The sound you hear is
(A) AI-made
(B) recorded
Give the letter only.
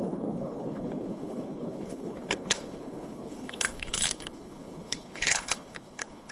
A